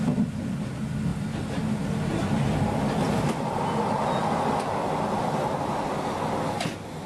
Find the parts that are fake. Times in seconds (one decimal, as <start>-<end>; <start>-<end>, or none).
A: none